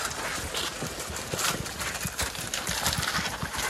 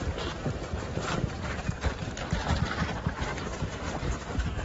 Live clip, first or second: first